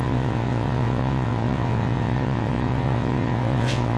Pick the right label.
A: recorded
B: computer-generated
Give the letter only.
B